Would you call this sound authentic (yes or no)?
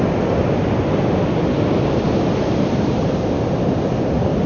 yes